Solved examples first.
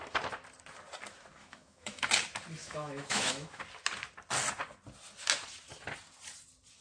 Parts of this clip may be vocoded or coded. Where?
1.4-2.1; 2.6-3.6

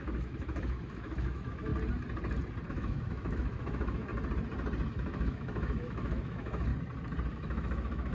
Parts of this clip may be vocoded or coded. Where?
0.0-1.7; 2.7-4.1; 4.9-6.7; 7.3-8.1

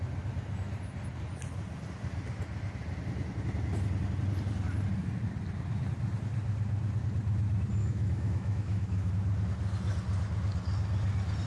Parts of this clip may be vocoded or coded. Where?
7.8-9.1

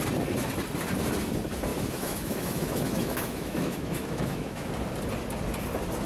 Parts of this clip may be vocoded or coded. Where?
1.7-4.7

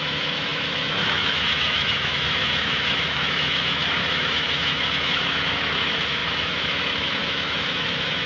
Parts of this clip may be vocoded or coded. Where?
0.0-8.3

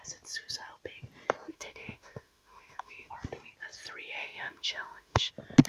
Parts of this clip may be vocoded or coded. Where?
1.5-3.1; 4.2-5.3

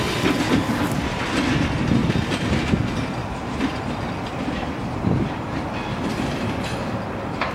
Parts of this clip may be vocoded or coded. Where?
none

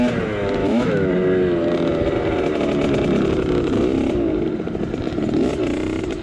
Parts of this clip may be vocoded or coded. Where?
0.6-1.1